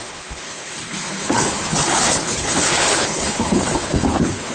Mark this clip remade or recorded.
remade